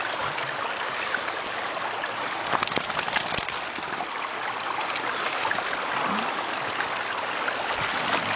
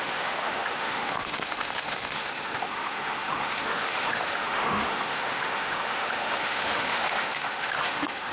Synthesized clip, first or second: second